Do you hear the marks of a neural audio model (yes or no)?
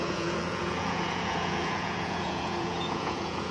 yes